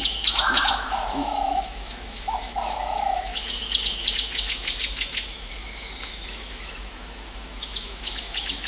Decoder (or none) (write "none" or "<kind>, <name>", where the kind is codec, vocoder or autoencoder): autoencoder, DAC-VAE